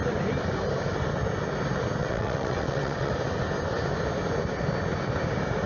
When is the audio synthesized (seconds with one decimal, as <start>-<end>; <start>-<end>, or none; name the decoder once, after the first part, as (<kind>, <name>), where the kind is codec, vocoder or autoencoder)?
2.0-3.1 (vocoder, WaveNeXt)